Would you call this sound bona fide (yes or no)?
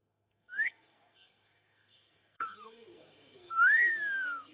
no